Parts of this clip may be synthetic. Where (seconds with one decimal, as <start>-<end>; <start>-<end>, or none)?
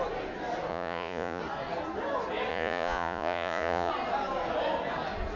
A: 0.7-1.4; 2.5-3.9